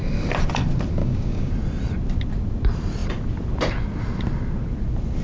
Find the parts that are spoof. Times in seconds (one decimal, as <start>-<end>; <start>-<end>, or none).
1.0-1.5